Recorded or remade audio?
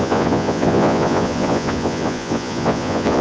remade